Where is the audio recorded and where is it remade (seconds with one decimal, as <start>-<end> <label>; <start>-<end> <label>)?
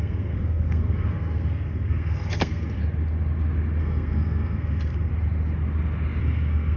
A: 0.0-2.8 remade; 2.8-3.8 recorded; 3.8-5.1 remade; 5.1-6.2 recorded; 6.2-6.8 remade